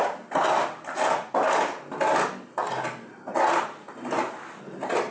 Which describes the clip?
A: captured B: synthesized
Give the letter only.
A